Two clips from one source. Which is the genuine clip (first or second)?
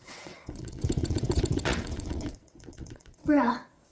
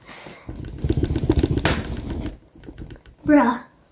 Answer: second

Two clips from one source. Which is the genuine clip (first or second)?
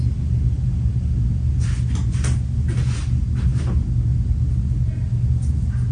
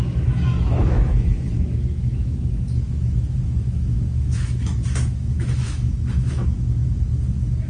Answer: first